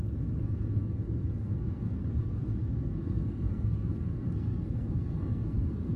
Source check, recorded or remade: remade